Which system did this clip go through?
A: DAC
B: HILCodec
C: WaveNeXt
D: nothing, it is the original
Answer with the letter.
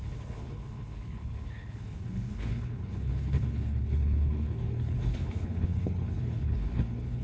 B